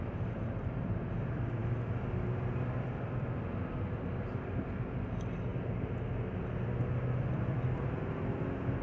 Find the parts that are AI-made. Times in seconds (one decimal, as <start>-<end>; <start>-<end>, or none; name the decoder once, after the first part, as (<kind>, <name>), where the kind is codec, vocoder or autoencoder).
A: 0.0-5.5 (vocoder, BigVGAN v2); 6.1-8.8